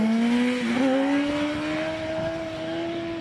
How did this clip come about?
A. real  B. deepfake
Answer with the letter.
A